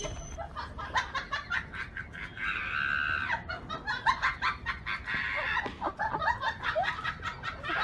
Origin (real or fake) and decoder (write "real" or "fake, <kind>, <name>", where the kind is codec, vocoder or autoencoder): real